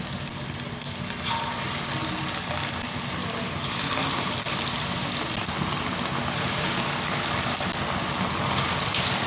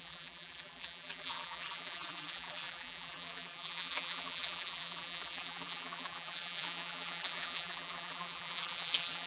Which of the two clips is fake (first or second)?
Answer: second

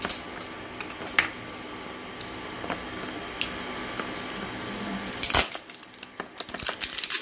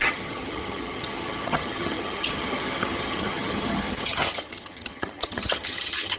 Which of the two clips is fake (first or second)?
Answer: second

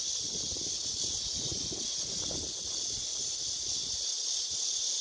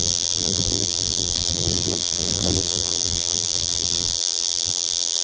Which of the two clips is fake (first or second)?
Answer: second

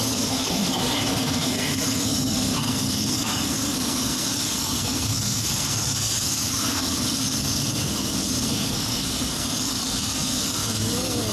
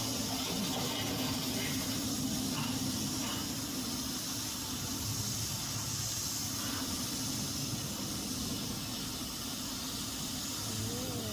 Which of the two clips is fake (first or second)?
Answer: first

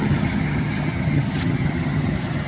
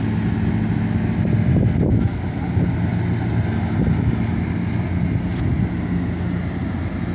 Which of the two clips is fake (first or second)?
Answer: first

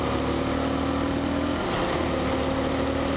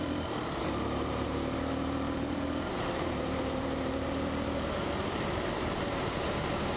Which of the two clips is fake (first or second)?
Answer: second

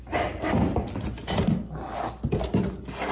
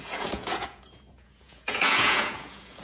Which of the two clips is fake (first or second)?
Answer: second